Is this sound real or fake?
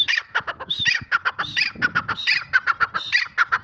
real